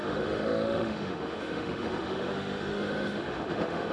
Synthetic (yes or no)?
yes